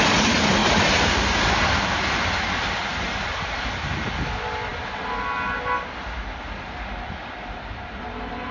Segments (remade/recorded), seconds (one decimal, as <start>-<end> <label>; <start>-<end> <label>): 0.0-2.8 recorded; 2.8-3.7 remade; 3.7-8.5 recorded